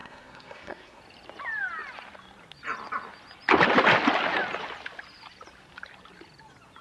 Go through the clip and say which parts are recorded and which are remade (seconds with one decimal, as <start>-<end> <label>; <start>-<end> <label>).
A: 0.0-1.0 remade; 1.0-6.8 recorded